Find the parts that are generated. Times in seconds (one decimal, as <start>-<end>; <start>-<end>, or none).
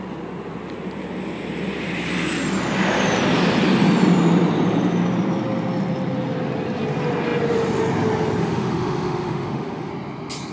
8.4-9.9